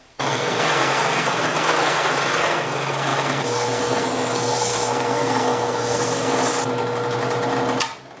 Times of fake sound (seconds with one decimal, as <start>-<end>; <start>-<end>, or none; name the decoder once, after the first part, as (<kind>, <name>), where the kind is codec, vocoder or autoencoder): 0.0-6.4 (codec, SNAC)